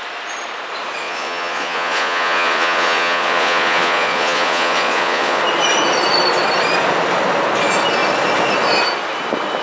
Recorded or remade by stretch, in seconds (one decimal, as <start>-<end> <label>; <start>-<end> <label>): 0.0-1.0 recorded; 1.0-5.4 remade; 5.4-9.6 recorded